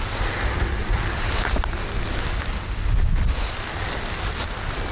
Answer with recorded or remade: recorded